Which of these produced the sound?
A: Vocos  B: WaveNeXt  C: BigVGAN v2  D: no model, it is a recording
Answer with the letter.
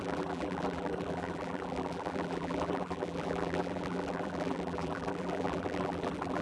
C